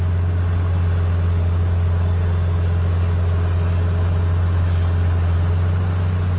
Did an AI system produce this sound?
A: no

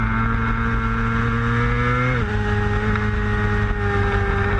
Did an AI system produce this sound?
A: no